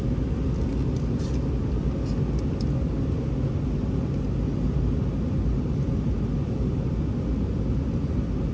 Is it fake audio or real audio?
real